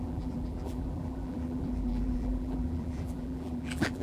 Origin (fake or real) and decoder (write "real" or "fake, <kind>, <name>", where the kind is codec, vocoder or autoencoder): fake, vocoder, BigVGAN v2